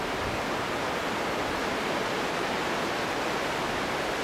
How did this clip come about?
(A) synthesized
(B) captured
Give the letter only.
B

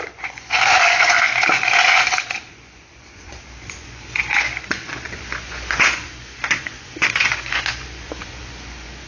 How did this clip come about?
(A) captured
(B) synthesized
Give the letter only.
B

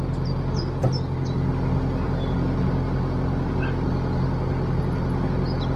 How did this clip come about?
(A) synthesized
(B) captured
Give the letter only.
B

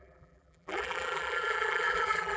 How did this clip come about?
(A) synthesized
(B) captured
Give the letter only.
A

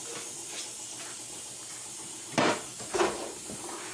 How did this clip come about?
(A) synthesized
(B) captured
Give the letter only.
B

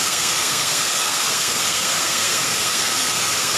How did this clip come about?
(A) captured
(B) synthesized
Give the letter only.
B